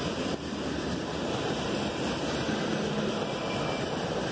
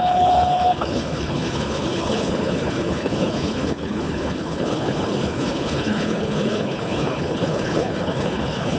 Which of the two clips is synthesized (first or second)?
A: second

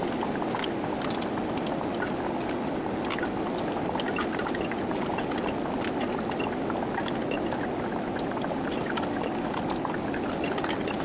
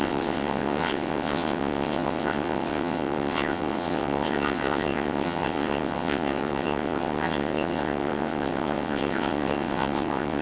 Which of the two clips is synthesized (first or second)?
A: second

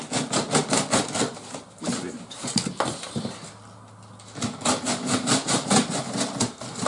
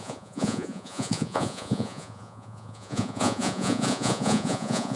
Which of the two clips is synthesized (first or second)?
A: second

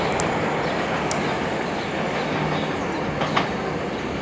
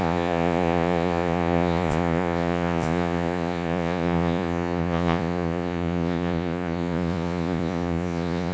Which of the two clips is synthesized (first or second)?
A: second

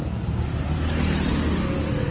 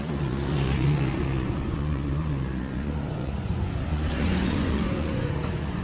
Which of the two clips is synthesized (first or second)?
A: second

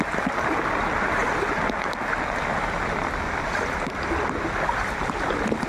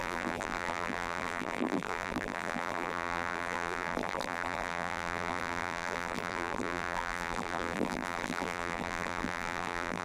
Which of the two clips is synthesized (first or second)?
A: second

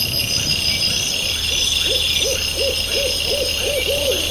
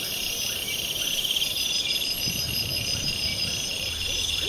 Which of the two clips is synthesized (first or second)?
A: second